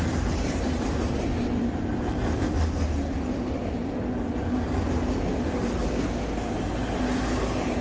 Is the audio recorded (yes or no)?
yes